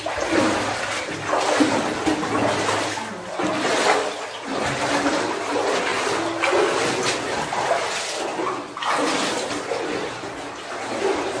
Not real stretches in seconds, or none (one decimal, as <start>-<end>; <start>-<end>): none